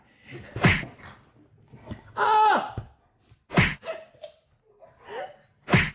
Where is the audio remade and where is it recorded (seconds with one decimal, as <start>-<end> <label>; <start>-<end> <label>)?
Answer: 0.0-5.9 recorded

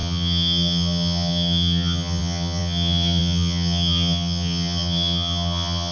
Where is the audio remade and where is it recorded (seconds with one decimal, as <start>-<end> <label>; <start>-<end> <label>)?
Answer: 0.0-5.9 remade